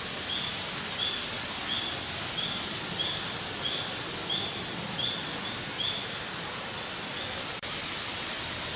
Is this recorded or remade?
recorded